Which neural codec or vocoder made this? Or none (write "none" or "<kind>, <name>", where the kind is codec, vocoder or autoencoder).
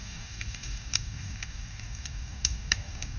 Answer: codec, DAC